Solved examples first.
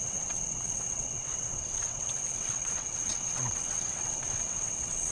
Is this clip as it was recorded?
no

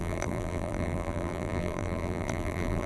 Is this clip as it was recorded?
no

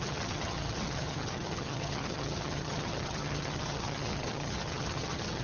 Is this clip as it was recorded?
no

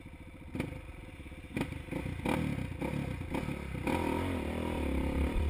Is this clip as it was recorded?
yes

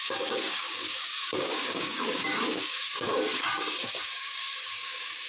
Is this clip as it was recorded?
no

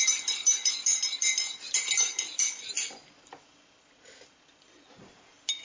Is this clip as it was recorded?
yes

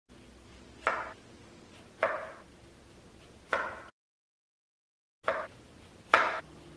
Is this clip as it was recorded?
yes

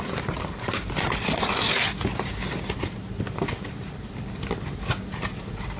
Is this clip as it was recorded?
yes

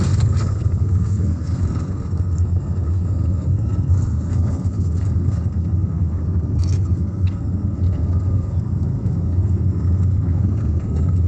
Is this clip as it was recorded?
no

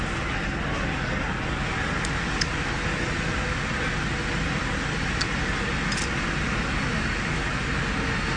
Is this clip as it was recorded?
yes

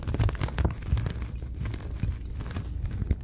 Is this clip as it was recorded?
yes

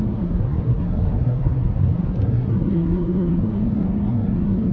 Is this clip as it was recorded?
no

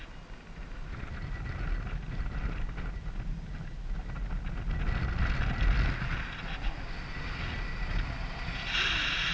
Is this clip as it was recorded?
yes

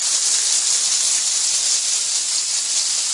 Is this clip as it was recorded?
yes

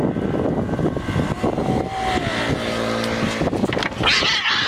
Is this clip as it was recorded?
yes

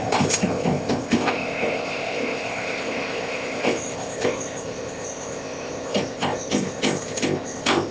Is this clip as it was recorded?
no